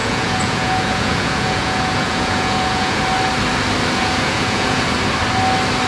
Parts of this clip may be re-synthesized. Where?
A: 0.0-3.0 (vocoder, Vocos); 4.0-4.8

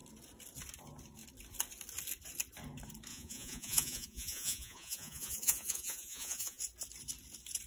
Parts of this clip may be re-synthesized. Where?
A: 3.1-6.6 (vocoder, Vocos)

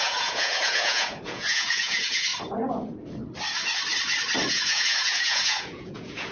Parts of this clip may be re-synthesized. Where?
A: 0.0-2.3 (vocoder, Vocos); 4.5-6.3

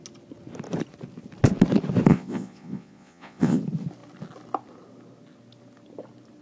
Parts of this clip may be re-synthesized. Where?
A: 2.1-3.6 (vocoder, Vocos)

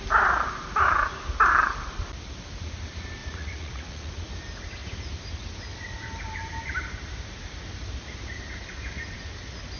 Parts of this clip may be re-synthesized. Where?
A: 3.2-4.1 (vocoder, Vocos)

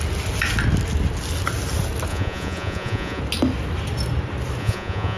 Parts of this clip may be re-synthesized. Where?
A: 2.1-3.2 (vocoder, Vocos); 4.6-5.2

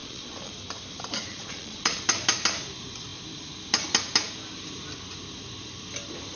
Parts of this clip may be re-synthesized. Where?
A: 0.0-0.5 (vocoder, Vocos); 1.3-2.0